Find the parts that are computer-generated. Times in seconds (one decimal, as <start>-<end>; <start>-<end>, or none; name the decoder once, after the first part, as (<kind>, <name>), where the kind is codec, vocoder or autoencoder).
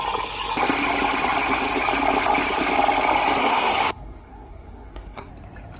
3.4-5.3 (codec, SNAC)